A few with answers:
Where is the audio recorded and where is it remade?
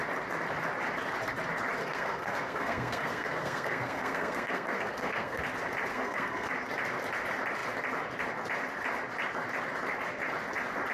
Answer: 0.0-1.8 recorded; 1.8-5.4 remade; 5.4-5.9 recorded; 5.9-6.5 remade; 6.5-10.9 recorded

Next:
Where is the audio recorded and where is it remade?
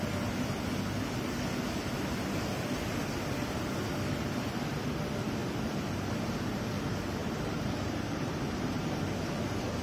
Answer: 0.0-7.2 recorded; 7.2-9.0 remade; 9.0-9.8 recorded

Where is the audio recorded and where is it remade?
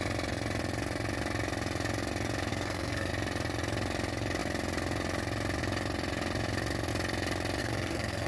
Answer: 0.0-2.5 recorded; 2.5-3.1 remade; 3.1-7.6 recorded; 7.6-8.3 remade